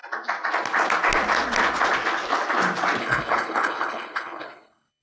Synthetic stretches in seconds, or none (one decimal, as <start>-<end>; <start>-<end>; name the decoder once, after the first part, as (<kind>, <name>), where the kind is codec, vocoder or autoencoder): 3.0-5.0 (codec, HILCodec)